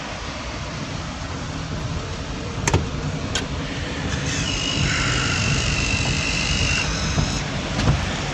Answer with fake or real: fake